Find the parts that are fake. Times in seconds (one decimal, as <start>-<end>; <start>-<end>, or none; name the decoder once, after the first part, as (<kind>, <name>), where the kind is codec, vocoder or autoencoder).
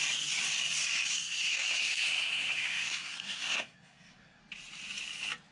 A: 1.1-4.4 (codec, SNAC)